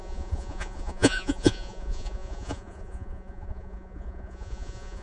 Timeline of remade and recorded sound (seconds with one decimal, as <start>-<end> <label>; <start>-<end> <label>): 0.0-5.0 remade